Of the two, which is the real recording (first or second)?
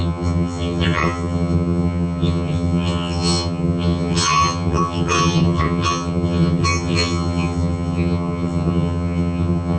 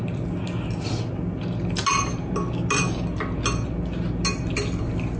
second